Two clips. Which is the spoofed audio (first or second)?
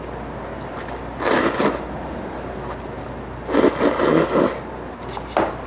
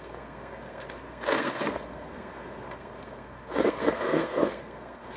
second